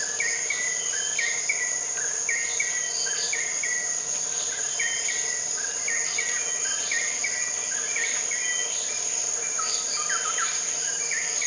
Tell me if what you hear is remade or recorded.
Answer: recorded